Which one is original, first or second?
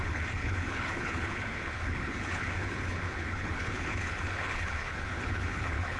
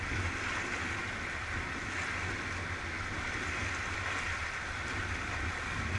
second